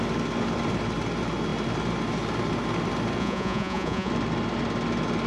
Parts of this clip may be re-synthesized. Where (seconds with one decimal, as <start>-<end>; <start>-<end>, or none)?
3.2-4.1